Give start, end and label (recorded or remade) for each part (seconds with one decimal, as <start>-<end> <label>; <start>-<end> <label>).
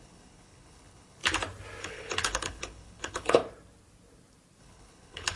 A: 0.0-1.2 remade; 1.2-1.8 recorded; 1.8-3.4 remade; 3.4-4.6 recorded; 4.6-5.4 remade